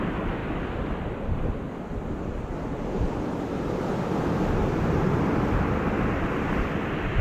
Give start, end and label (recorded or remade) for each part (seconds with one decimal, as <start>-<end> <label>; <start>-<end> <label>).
0.0-7.2 recorded